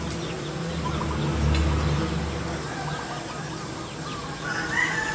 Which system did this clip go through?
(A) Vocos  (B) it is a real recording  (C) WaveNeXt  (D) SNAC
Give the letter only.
B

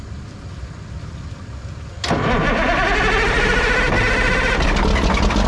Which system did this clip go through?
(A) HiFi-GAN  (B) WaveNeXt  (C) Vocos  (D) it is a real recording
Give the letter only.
D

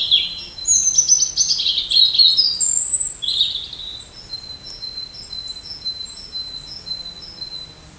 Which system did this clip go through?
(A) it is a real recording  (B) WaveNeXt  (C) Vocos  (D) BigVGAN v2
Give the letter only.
A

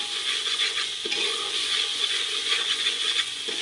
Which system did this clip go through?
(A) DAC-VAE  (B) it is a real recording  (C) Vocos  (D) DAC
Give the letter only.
C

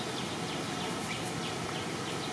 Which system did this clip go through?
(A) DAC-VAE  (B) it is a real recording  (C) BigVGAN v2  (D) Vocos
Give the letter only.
B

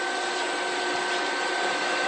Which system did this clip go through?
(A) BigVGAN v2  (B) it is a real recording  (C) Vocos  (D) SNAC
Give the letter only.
B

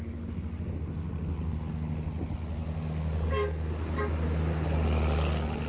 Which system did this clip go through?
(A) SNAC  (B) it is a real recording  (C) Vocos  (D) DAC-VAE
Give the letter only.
B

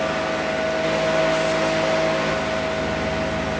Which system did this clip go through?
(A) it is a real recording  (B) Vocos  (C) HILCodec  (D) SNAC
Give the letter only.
A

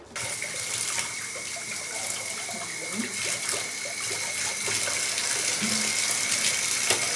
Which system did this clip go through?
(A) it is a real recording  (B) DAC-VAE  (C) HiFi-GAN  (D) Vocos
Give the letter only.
A